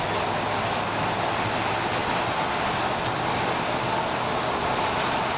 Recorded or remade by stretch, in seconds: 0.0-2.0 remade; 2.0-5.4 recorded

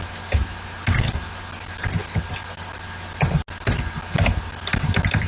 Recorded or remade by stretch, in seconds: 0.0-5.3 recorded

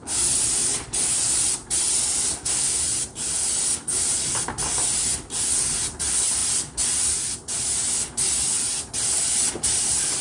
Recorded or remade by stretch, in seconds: 0.0-2.3 recorded; 2.3-2.8 remade; 2.8-10.2 recorded

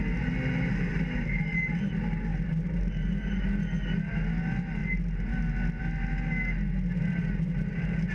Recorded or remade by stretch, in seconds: 0.0-0.9 recorded; 0.9-1.9 remade; 1.9-2.3 recorded; 2.3-3.4 remade; 3.4-8.1 recorded